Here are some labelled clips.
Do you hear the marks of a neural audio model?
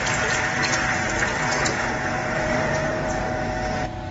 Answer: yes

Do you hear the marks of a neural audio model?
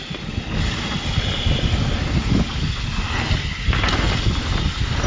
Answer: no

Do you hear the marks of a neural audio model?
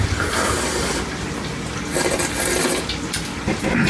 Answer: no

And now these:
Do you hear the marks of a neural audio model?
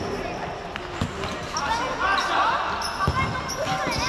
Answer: no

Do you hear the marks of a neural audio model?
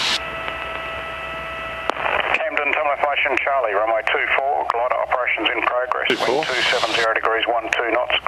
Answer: no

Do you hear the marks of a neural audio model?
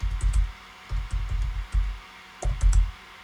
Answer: no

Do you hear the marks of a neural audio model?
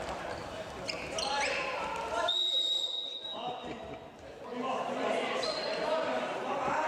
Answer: yes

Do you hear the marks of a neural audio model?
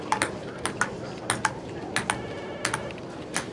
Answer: no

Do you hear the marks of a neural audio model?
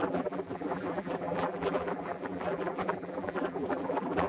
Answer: yes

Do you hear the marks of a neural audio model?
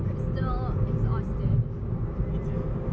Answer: no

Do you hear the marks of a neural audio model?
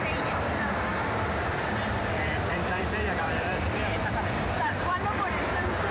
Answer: yes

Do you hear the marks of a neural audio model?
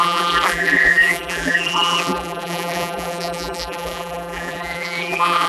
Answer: yes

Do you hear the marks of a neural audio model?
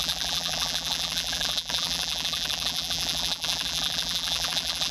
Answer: yes